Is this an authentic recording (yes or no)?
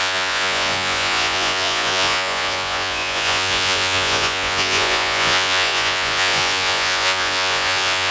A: no